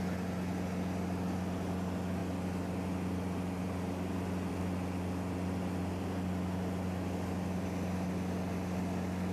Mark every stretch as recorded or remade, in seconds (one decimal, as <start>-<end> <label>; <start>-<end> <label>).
0.0-9.3 recorded